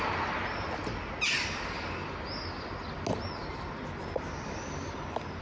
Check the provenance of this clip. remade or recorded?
recorded